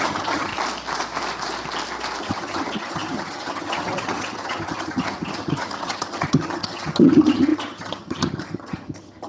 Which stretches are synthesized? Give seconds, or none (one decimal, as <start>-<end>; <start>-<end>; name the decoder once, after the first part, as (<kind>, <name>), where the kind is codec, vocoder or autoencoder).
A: 0.0-0.5 (vocoder, HiFi-GAN); 2.2-9.3